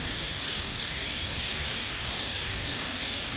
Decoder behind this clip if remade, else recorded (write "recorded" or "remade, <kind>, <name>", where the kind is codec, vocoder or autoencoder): remade, codec, DAC